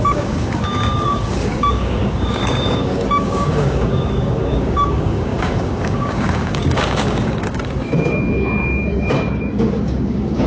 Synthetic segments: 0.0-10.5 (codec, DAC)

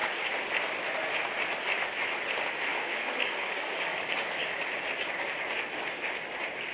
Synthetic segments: 2.7-4.7 (codec, DAC)

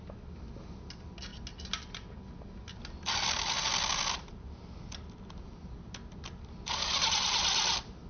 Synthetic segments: none

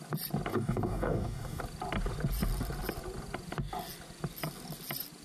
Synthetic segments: 0.5-1.6 (codec, DAC)

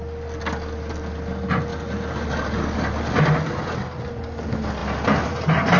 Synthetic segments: none